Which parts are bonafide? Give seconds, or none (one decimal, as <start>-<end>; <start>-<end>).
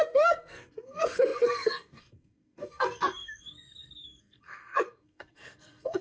none